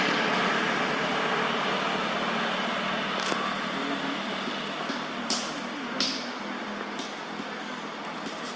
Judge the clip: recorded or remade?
recorded